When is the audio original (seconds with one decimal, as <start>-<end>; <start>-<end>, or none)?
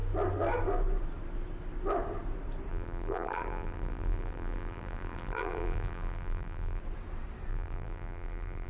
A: 0.0-2.7; 6.8-7.5